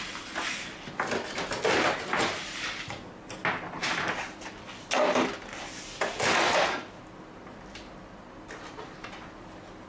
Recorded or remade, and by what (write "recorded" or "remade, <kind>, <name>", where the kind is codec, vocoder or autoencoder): recorded